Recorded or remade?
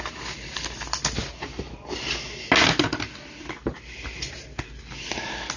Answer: recorded